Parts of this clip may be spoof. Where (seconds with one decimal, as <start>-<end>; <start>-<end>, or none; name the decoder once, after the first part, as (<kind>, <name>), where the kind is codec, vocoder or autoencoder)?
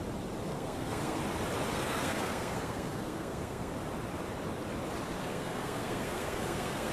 0.5-1.2 (codec, SNAC); 1.7-3.7; 5.2-6.9